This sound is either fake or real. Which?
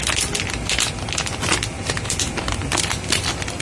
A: real